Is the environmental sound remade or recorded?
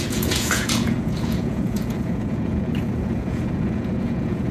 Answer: remade